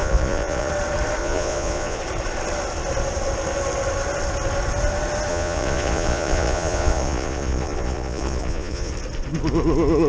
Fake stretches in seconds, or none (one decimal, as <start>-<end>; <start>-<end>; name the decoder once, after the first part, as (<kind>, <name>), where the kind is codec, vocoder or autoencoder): 0.0-0.7 (vocoder, Vocos); 1.2-2.0; 5.3-8.9